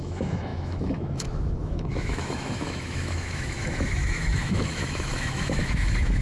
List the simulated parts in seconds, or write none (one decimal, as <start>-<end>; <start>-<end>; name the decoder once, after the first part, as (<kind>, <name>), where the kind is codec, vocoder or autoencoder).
0.0-6.2 (autoencoder, DAC-VAE)